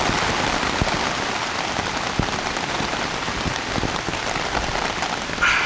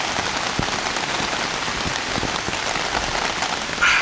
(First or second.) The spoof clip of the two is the first